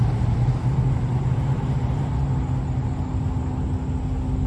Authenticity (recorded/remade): recorded